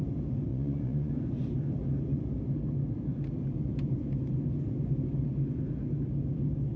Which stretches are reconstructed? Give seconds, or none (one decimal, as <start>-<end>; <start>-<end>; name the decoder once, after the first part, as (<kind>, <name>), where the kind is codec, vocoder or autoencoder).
0.5-1.1 (vocoder, Vocos)